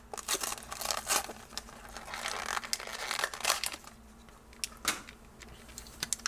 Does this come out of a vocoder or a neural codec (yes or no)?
no